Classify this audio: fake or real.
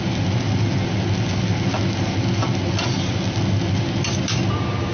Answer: real